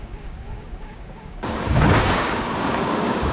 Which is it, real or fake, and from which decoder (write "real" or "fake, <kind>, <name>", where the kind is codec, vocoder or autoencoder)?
fake, codec, DAC